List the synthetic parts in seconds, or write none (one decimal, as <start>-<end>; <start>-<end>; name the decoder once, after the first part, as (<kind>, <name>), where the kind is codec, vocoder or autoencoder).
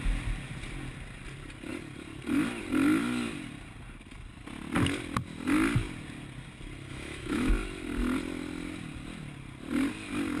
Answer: 6.9-7.5 (autoencoder, DAC-VAE)